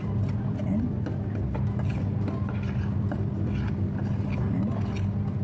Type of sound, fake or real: real